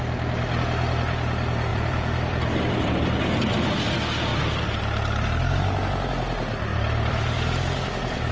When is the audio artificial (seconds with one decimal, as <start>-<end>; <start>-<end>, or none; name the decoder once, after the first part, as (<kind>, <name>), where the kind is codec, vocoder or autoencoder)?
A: 1.7-3.2 (vocoder, BigVGAN v2); 4.3-4.8; 6.7-8.3